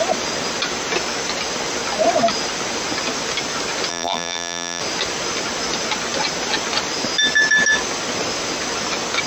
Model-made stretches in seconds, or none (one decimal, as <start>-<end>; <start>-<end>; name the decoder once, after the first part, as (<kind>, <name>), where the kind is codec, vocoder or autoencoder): 3.9-4.8 (vocoder, BigVGAN v2)